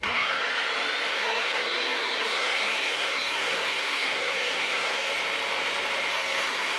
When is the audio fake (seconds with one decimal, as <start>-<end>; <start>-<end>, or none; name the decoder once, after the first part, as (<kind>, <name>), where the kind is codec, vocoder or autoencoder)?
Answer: 0.0-0.5 (codec, SNAC); 1.1-5.1; 6.1-6.8